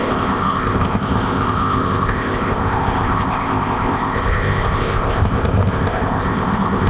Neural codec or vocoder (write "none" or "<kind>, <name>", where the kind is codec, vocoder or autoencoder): codec, ZipCodec